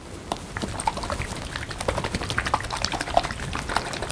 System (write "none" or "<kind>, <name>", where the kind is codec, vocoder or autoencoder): none